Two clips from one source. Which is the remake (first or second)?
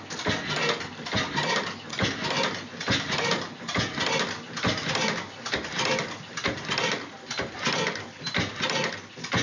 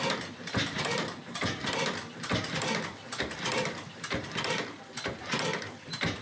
second